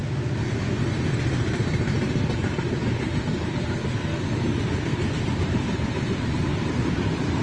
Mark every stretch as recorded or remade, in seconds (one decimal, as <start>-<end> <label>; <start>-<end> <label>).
0.0-4.9 recorded; 4.9-7.4 remade